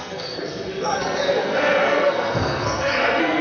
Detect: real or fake fake